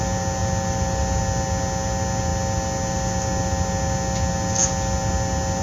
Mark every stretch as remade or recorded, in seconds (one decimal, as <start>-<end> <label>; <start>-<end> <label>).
0.0-0.4 recorded; 0.4-1.2 remade; 1.2-5.6 recorded

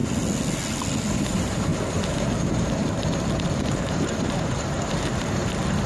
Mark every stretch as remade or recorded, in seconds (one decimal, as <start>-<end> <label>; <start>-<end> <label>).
0.0-1.1 recorded; 1.1-1.7 remade; 1.7-3.8 recorded; 3.8-5.9 remade

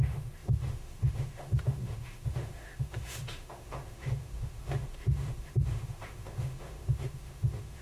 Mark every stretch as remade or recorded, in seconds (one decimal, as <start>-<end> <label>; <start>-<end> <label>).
0.0-7.8 remade

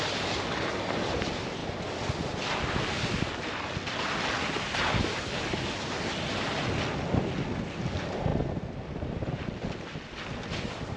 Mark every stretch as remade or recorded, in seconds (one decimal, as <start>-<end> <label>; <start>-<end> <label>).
0.0-11.0 recorded

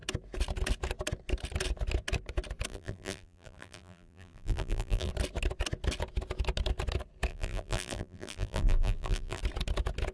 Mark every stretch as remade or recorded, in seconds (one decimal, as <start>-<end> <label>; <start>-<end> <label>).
0.0-2.7 recorded; 2.7-5.1 remade; 5.1-7.3 recorded; 7.3-9.4 remade; 9.4-10.1 recorded